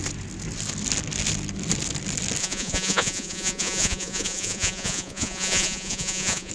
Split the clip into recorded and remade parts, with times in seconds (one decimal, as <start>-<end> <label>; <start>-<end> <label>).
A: 0.0-2.4 recorded; 2.4-6.5 remade